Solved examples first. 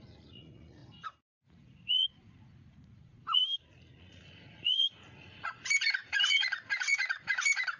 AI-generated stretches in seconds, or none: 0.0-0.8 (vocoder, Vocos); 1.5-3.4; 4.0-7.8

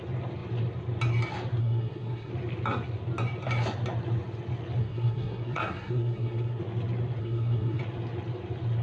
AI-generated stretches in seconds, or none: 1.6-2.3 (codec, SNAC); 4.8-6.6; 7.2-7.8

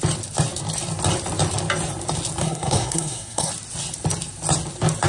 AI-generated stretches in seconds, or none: 2.4-3.5 (codec, SNAC)

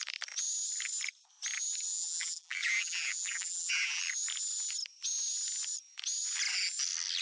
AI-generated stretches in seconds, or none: 1.9-4.0 (vocoder, BigVGAN v2)